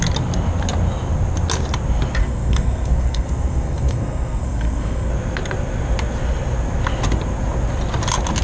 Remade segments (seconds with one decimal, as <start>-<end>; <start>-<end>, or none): 2.2-5.1